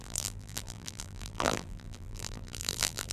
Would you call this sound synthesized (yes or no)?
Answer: yes